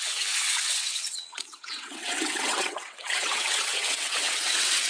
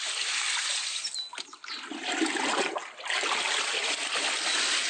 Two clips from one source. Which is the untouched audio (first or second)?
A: second